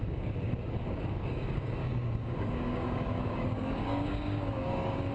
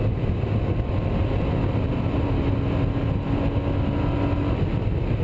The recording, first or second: second